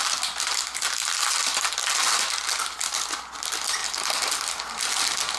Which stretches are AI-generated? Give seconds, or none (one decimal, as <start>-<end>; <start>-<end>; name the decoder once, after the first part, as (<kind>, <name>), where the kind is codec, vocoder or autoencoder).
none